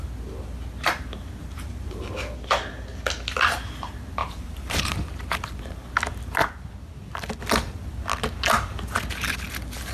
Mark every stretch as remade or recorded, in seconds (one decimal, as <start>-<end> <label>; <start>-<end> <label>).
0.0-1.4 recorded; 1.4-2.1 remade; 2.1-4.2 recorded; 4.2-4.9 remade; 4.9-9.9 recorded